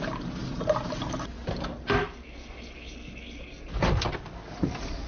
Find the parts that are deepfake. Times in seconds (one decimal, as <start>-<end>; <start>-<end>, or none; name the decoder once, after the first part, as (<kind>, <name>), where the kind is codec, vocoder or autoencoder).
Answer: none